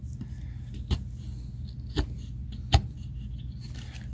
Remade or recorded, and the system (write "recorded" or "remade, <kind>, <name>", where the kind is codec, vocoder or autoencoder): recorded